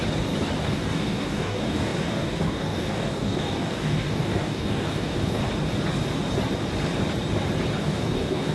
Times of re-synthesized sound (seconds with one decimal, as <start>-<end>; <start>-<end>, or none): 0.6-5.4; 7.8-8.5

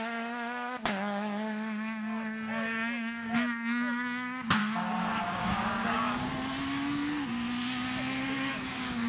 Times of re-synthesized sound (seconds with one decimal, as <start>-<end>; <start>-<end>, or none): 0.0-4.6; 5.4-6.3; 8.5-9.1

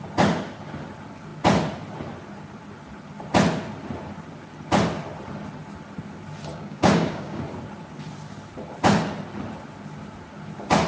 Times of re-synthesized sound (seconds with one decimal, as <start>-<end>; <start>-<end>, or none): 6.5-7.4

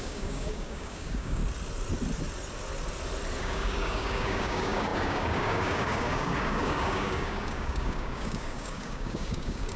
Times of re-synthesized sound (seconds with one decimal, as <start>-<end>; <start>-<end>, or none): 0.0-1.4; 3.4-9.8